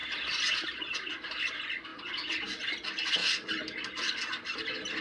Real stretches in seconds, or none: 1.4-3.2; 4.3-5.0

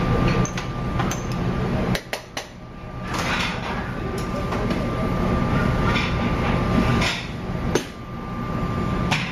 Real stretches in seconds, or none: 0.0-1.0; 2.0-3.5; 4.4-9.3

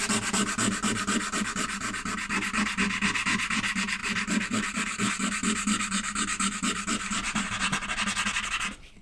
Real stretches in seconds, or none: 0.0-4.0; 5.1-9.0

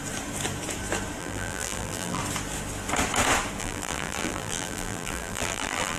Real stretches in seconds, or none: 0.0-1.2; 2.2-3.6

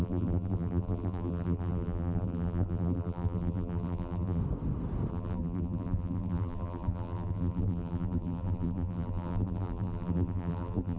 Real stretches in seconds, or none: 4.4-5.1